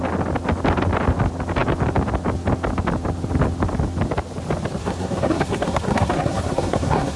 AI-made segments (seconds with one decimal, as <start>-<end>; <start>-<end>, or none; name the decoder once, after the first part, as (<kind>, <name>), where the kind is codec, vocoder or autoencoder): 4.8-7.2 (codec, SNAC)

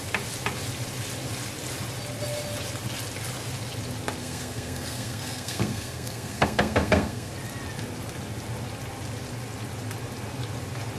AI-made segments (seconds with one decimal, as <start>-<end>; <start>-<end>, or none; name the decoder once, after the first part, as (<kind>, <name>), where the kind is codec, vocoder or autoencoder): 4.2-7.3 (codec, SNAC)

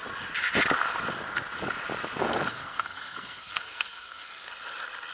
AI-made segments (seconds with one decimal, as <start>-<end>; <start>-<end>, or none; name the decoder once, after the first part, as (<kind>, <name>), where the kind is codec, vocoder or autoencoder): 2.5-4.5 (codec, SNAC)

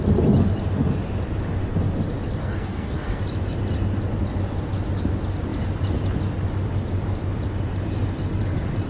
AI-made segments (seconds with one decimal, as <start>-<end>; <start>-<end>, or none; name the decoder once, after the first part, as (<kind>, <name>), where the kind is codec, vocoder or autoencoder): 2.4-3.2 (codec, SNAC)

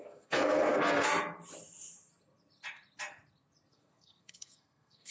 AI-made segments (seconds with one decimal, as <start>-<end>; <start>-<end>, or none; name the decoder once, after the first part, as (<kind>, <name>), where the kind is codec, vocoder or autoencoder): 0.0-1.1 (codec, SNAC); 3.7-5.1